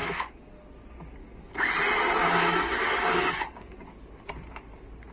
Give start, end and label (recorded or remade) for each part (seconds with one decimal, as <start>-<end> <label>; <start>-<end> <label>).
0.0-0.5 remade; 0.5-1.2 recorded; 1.2-1.7 remade; 1.7-2.2 recorded; 2.2-3.9 remade; 3.9-5.1 recorded